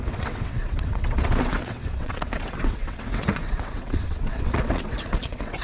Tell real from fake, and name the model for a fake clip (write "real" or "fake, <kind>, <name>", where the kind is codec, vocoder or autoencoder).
fake, vocoder, WaveNeXt